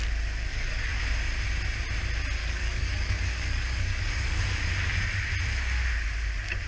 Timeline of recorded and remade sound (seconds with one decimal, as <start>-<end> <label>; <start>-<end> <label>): 0.0-0.5 recorded; 0.5-1.0 remade; 1.0-2.4 recorded; 2.4-4.4 remade; 4.4-6.7 recorded